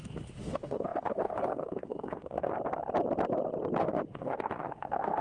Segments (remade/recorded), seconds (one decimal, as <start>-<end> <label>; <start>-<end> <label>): 0.0-2.5 remade; 2.5-3.8 recorded; 3.8-5.2 remade